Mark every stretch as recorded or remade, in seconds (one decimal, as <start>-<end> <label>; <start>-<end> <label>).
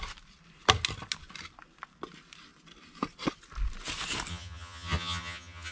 0.0-4.3 recorded; 4.3-5.7 remade